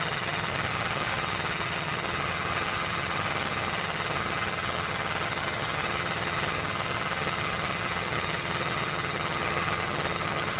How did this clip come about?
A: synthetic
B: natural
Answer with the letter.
A